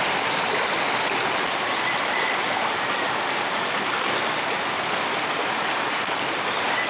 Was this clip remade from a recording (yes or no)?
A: no